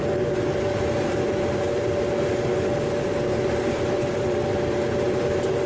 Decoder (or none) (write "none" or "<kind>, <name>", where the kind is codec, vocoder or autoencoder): none